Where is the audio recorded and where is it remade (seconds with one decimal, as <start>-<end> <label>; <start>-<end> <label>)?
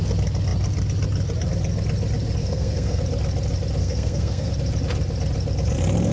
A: 0.0-2.4 recorded; 2.4-3.0 remade; 3.0-3.8 recorded; 3.8-4.5 remade; 4.5-6.1 recorded